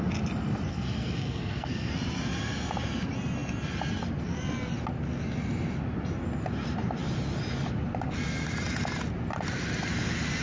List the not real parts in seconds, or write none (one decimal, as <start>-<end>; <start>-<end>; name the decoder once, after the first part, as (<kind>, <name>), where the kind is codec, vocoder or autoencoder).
0.7-1.9 (codec, SNAC)